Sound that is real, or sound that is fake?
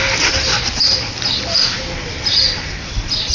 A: real